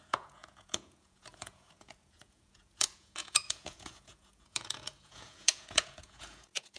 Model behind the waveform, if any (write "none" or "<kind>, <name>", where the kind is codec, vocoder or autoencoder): vocoder, Vocos